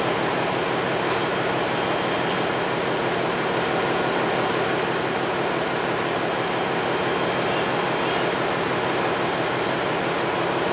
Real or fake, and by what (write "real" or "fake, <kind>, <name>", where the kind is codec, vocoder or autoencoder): real